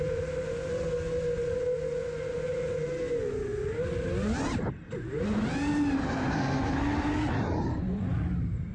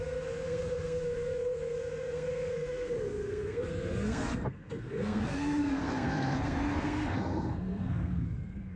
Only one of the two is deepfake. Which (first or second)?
second